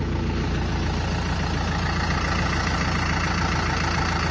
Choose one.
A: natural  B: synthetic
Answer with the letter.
A